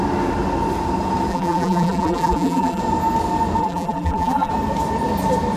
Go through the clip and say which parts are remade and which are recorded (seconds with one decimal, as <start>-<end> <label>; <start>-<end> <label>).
0.0-1.3 recorded; 1.3-2.8 remade; 2.8-3.6 recorded; 3.6-4.5 remade; 4.5-5.6 recorded